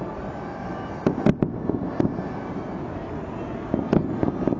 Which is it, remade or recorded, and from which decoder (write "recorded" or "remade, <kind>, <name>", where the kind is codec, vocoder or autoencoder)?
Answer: recorded